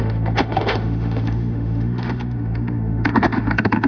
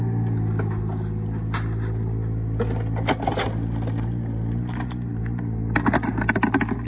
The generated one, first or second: first